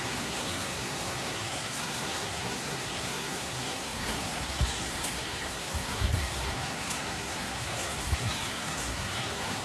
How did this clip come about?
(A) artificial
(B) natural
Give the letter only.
A